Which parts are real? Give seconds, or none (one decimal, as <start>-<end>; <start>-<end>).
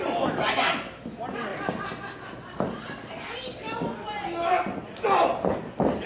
0.0-6.1